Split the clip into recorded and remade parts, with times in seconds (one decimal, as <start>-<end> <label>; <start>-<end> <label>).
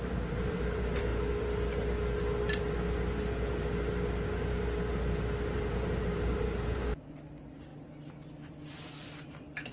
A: 0.0-1.1 remade; 1.1-5.6 recorded; 5.6-7.7 remade; 7.7-8.7 recorded; 8.7-9.7 remade